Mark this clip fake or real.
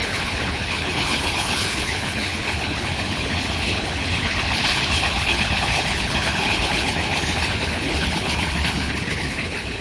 fake